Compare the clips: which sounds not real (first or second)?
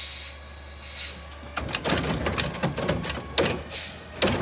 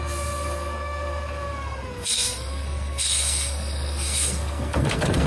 second